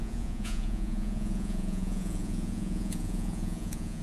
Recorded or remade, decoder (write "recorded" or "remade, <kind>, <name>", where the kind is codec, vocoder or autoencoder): remade, vocoder, Vocos